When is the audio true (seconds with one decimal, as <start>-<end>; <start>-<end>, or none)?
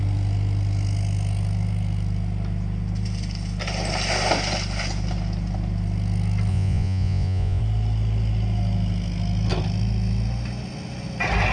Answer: 0.0-6.5; 7.6-11.5